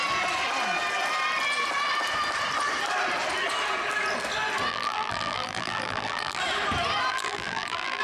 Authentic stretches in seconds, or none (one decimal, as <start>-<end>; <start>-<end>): 0.0-4.7; 6.4-7.1